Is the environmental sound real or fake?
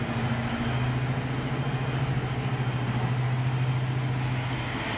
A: real